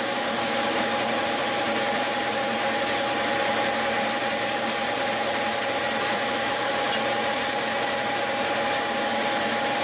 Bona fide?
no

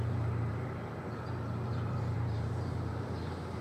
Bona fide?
no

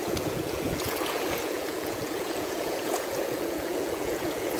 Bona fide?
no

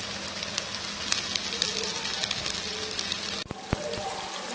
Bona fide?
yes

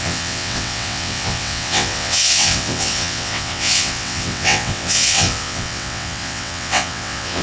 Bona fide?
no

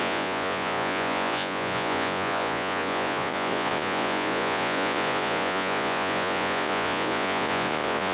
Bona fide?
no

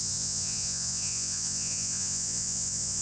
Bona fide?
no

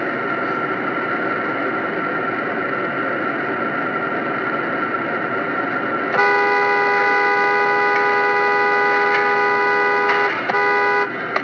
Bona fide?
yes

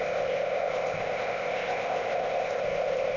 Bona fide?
no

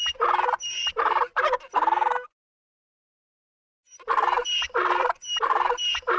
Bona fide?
yes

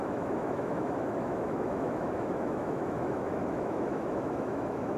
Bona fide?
no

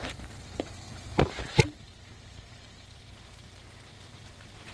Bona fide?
no